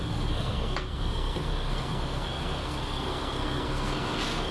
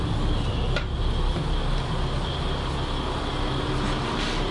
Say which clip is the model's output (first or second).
first